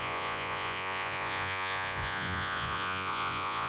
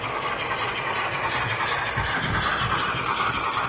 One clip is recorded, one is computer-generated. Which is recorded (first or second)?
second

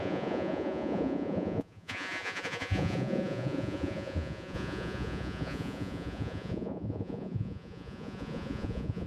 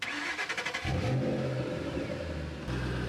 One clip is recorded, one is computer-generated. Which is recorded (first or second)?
second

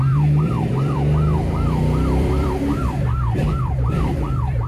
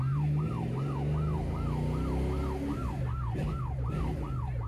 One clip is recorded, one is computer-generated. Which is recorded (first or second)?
second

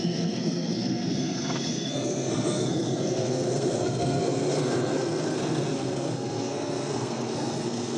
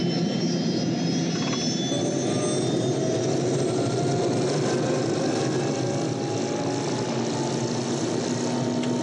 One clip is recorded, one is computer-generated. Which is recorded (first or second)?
second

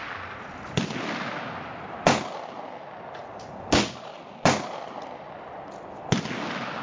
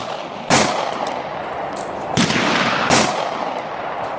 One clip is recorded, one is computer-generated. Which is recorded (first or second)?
first